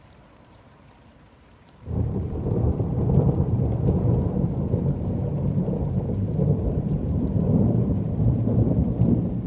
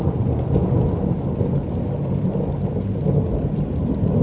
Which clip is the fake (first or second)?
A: first